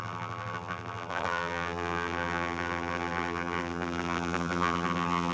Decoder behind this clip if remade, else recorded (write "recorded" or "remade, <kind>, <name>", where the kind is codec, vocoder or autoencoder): remade, vocoder, BigVGAN v2